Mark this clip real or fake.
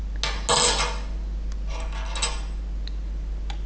real